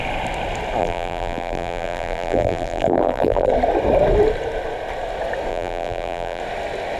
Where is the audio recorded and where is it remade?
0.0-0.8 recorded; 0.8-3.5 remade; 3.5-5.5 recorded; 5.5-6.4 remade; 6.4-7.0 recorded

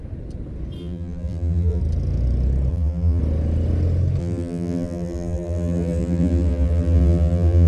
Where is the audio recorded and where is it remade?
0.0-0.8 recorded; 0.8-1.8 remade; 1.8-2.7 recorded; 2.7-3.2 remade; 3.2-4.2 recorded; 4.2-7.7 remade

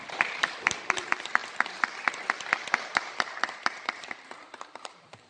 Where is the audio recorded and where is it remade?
0.0-1.4 remade; 1.4-2.7 recorded; 2.7-5.3 remade

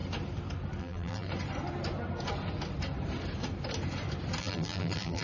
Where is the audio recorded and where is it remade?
0.0-0.8 recorded; 0.8-1.3 remade; 1.3-4.4 recorded; 4.4-5.2 remade